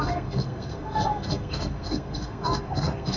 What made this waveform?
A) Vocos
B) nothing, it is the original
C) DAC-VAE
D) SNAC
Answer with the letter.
D